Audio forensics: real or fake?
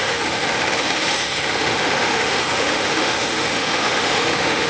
fake